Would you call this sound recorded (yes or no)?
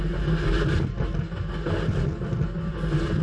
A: yes